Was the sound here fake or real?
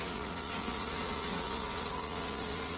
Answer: fake